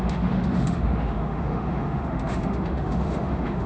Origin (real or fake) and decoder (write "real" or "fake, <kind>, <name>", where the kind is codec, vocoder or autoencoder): fake, autoencoder, DAC-VAE